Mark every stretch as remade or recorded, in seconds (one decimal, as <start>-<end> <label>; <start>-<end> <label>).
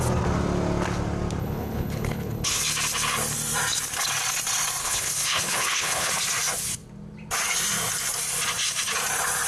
0.0-1.4 recorded; 1.4-2.6 remade; 2.6-4.8 recorded; 4.8-6.1 remade; 6.1-9.5 recorded